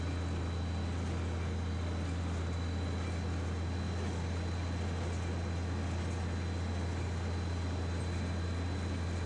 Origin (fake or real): real